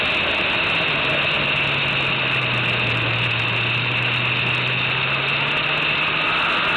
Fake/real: real